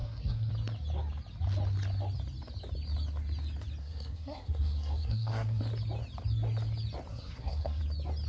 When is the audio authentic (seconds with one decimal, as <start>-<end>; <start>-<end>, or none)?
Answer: 0.5-3.8; 5.6-7.1; 7.8-8.3